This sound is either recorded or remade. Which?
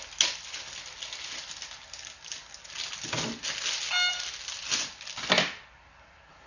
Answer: recorded